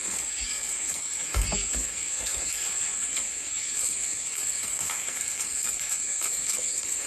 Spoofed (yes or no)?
yes